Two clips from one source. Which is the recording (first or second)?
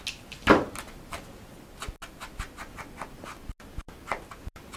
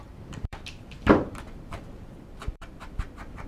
first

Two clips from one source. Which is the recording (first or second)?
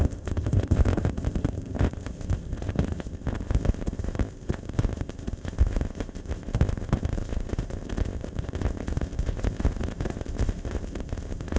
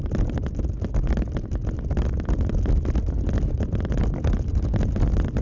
second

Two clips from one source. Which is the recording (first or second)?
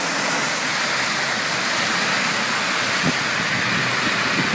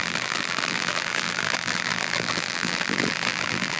first